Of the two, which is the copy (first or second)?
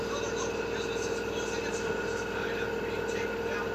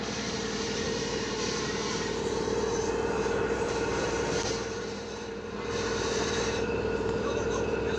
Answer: second